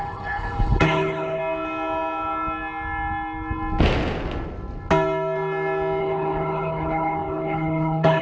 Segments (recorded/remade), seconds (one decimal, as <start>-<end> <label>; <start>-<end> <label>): 0.0-1.4 remade; 1.4-6.0 recorded; 6.0-8.2 remade